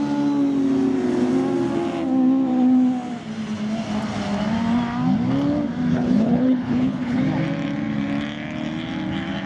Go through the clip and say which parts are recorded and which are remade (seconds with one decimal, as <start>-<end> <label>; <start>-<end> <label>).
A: 0.0-5.9 recorded; 5.9-7.2 remade; 7.2-9.5 recorded